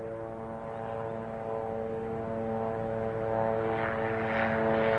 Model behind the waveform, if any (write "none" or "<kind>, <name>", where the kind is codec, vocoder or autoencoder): none